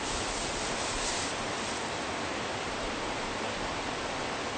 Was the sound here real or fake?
real